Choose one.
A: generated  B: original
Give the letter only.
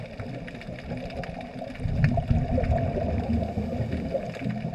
B